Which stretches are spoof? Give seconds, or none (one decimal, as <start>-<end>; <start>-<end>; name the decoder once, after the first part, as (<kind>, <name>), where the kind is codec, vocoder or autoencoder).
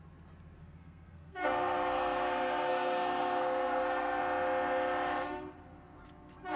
0.6-4.2 (codec, SNAC)